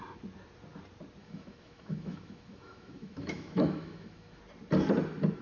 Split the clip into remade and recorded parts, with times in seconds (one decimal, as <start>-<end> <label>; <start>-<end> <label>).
0.0-1.2 recorded; 1.2-4.4 remade; 4.4-5.4 recorded